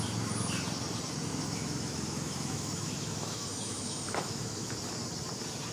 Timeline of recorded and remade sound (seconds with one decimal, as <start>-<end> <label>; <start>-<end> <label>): 0.0-1.3 recorded; 1.3-4.7 remade; 4.7-5.7 recorded

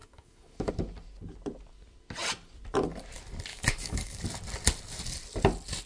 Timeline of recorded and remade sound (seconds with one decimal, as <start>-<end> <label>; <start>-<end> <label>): 0.0-0.7 remade; 0.7-3.5 recorded; 3.5-4.2 remade; 4.2-5.9 recorded

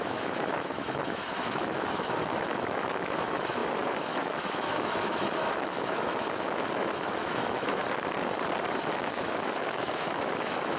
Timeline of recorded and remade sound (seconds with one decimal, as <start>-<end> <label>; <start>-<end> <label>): 0.0-7.8 remade; 7.8-8.8 recorded; 8.8-10.8 remade

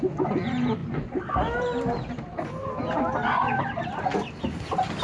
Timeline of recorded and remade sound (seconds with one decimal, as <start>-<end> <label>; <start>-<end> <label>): 0.0-5.0 recorded

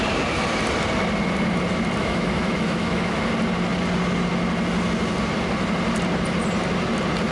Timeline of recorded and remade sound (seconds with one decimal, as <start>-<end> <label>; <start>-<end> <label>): 0.0-2.0 recorded; 2.0-3.2 remade; 3.2-7.3 recorded

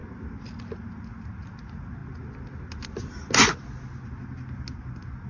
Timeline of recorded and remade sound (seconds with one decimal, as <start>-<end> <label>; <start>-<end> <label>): 0.0-5.3 recorded

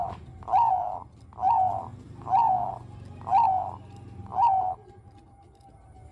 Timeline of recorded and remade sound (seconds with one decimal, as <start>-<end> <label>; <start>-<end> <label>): 0.0-6.1 recorded